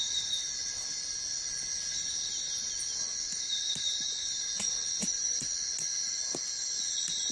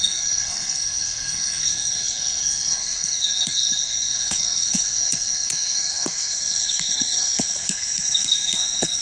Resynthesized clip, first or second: second